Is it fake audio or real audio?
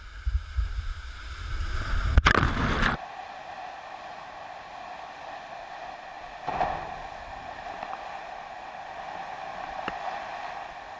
real